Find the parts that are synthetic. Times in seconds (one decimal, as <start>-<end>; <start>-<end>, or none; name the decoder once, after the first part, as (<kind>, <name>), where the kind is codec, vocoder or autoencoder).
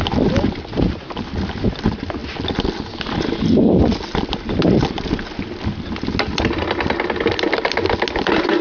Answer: none